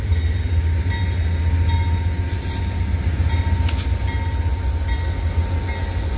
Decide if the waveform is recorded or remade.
recorded